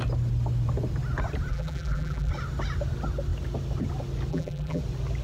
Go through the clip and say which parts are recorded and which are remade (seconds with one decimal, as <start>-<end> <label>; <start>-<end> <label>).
0.0-1.5 recorded; 1.5-2.3 remade; 2.3-4.3 recorded; 4.3-4.8 remade; 4.8-5.2 recorded